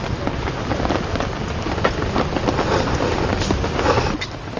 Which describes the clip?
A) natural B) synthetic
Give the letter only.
A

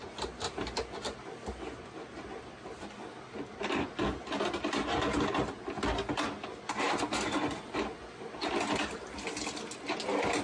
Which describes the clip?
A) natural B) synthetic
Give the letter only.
A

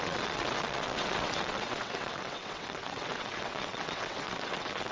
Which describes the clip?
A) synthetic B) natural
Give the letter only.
A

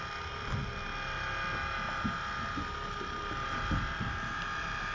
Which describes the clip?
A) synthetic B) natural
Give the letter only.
B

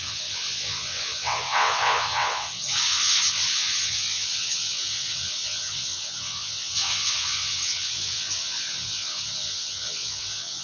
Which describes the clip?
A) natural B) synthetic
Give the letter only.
B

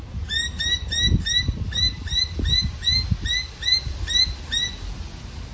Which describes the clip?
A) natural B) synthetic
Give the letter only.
A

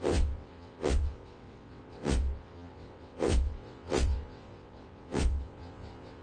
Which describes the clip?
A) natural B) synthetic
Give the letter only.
B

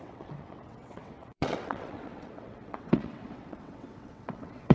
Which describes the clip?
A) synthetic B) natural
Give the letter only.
A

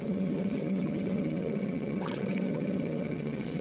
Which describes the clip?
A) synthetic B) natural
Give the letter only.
A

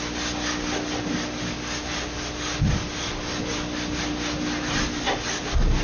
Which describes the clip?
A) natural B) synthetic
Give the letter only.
A